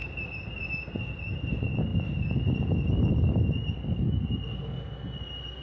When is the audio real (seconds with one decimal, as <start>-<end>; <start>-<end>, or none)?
0.5-5.6